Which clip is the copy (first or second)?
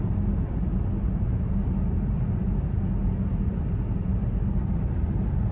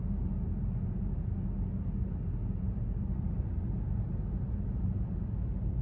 first